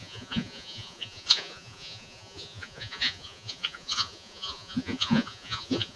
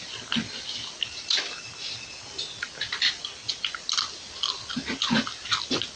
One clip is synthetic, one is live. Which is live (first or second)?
second